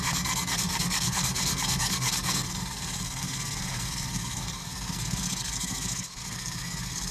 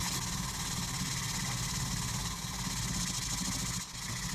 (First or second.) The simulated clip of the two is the first